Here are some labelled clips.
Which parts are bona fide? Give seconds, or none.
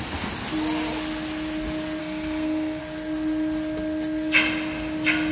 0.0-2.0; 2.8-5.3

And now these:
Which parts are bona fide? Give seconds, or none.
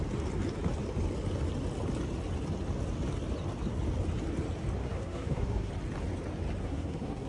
0.0-4.8; 5.7-6.6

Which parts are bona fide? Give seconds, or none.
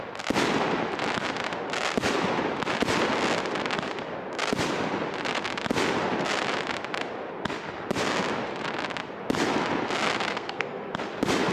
0.0-10.3; 10.9-11.5